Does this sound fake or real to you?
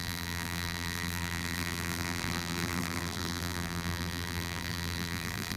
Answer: fake